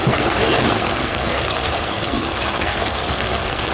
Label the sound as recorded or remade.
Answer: remade